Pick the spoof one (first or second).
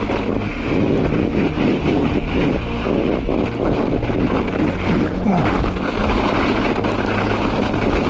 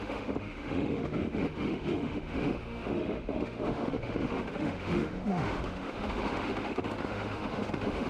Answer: second